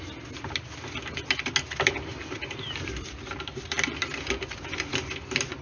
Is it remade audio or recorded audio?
recorded